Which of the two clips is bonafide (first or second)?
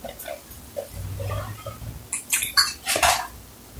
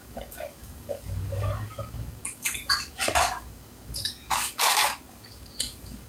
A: first